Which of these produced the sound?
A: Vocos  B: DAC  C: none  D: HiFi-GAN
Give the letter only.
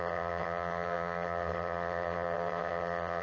D